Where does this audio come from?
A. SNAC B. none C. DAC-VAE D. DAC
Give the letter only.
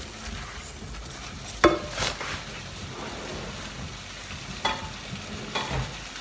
B